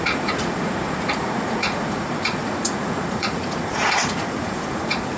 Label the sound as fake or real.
fake